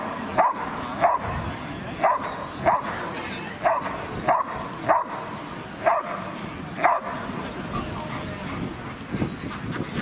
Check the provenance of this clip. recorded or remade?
recorded